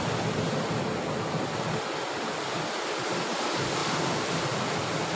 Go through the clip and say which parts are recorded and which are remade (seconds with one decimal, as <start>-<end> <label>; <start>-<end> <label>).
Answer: 0.0-5.2 recorded